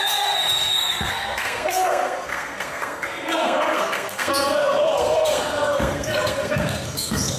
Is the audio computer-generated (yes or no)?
yes